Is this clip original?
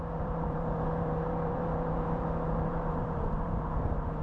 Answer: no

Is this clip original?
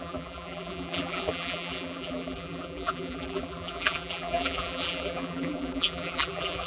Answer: no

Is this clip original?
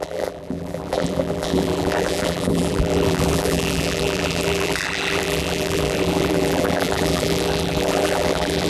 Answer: no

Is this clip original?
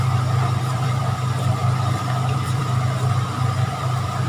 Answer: no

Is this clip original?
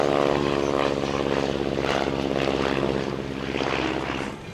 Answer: yes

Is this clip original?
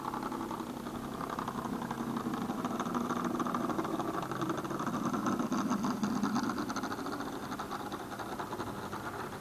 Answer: yes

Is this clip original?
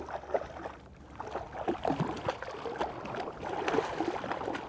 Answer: yes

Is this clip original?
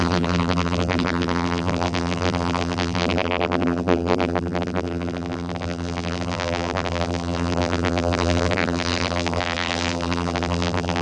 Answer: no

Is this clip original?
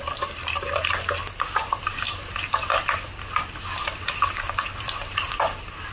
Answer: no